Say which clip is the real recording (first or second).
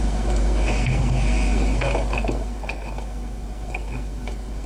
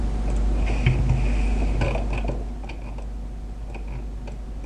second